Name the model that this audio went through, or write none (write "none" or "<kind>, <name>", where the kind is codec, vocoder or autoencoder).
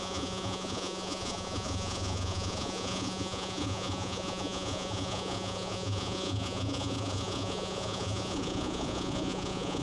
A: vocoder, Vocos